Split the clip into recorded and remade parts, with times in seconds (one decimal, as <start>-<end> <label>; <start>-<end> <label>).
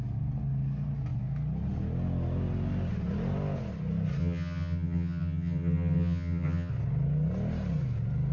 0.0-4.2 recorded; 4.2-6.7 remade; 6.7-8.3 recorded